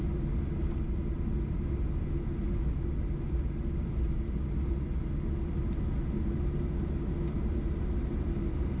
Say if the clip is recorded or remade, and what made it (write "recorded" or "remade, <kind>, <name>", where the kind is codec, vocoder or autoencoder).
recorded